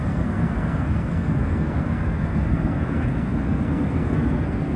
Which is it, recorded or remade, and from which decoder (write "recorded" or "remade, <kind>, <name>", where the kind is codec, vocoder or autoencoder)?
remade, codec, SNAC